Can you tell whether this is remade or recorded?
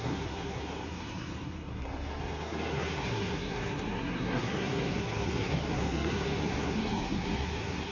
remade